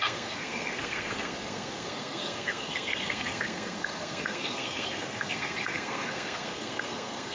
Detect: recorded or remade remade